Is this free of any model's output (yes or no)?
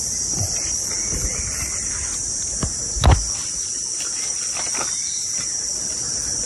yes